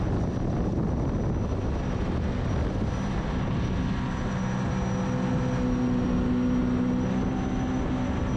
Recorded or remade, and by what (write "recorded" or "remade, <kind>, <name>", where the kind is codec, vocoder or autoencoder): recorded